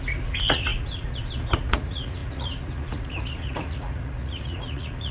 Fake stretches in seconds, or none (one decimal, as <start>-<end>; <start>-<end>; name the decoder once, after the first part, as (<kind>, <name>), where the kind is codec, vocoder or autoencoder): 0.0-5.1 (vocoder, Vocos)